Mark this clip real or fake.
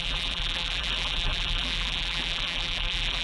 fake